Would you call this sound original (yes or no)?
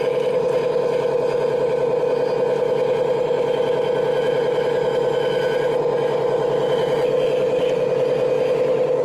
yes